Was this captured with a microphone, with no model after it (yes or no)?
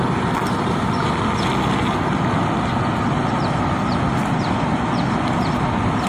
yes